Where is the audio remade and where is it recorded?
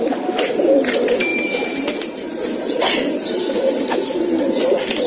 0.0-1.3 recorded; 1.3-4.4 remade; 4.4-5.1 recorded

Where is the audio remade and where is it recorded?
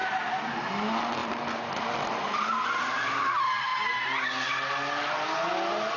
0.0-0.7 remade; 0.7-1.2 recorded; 1.2-3.2 remade; 3.2-6.0 recorded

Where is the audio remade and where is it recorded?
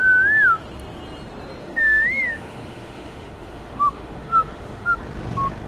0.0-1.6 recorded; 1.6-5.0 remade; 5.0-5.7 recorded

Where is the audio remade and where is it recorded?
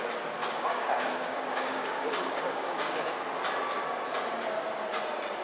0.0-0.4 recorded; 0.4-3.1 remade; 3.1-5.4 recorded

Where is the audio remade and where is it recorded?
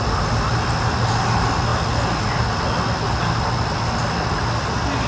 0.0-5.1 recorded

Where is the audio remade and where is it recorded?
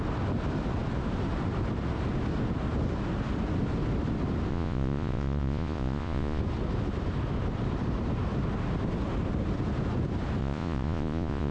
0.0-4.5 recorded; 4.5-6.4 remade; 6.4-10.4 recorded; 10.4-11.5 remade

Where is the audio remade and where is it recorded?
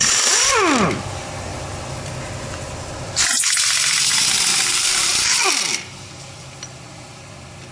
0.0-4.5 recorded; 4.5-7.2 remade; 7.2-7.7 recorded